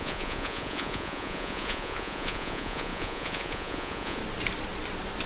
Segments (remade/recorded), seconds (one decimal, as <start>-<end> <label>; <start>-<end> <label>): 0.0-4.2 remade; 4.2-5.3 recorded